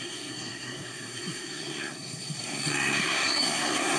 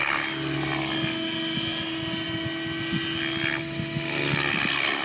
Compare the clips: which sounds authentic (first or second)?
second